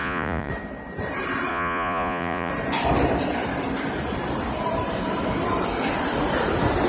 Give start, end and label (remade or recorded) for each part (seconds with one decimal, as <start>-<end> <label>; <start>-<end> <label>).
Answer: 0.0-0.5 remade; 0.5-1.5 recorded; 1.5-2.5 remade; 2.5-6.9 recorded